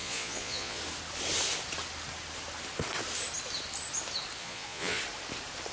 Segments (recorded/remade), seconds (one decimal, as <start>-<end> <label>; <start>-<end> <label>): 0.0-0.8 remade; 0.8-4.4 recorded; 4.4-5.0 remade; 5.0-5.7 recorded